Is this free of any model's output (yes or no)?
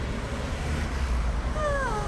yes